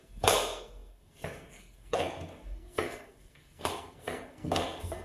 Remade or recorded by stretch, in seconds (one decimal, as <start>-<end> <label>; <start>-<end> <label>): 0.0-5.0 remade